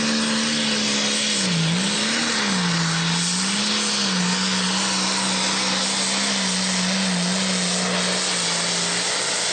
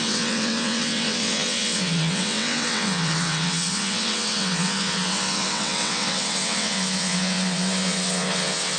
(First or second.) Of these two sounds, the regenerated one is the second